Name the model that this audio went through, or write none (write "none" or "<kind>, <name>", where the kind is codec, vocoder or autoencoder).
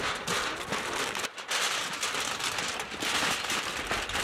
none